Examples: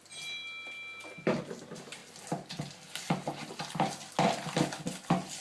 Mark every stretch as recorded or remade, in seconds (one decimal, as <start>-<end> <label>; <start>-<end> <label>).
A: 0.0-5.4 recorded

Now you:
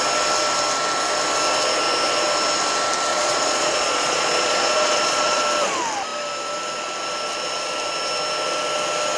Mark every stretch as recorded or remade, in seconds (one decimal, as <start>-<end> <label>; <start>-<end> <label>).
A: 0.0-3.1 recorded; 3.1-5.4 remade; 5.4-9.2 recorded

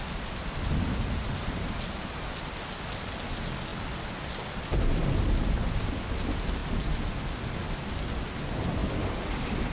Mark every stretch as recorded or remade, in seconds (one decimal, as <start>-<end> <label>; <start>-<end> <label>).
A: 0.0-9.7 recorded